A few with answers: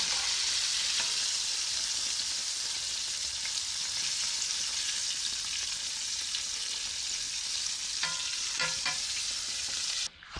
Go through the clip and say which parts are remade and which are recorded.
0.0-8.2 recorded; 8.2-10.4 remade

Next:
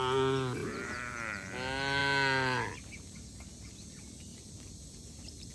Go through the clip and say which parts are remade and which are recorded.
0.0-0.6 recorded; 0.6-1.5 remade; 1.5-4.3 recorded; 4.3-5.5 remade

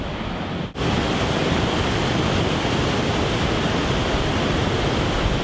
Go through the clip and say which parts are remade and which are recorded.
0.0-1.4 recorded; 1.4-3.8 remade; 3.8-5.4 recorded

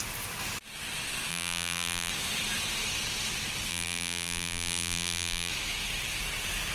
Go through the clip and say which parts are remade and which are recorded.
0.0-1.3 recorded; 1.3-2.1 remade; 2.1-3.7 recorded; 3.7-5.5 remade; 5.5-6.7 recorded

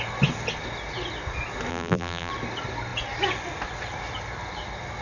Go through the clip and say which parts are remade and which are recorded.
0.0-1.7 recorded; 1.7-2.3 remade; 2.3-5.0 recorded

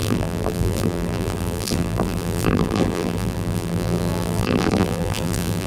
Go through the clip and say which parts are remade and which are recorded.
0.0-5.7 remade

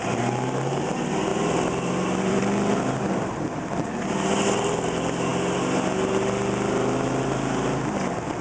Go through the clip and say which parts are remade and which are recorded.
0.0-1.3 recorded; 1.3-2.4 remade; 2.4-8.4 recorded